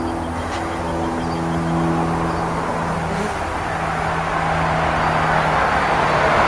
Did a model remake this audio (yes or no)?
no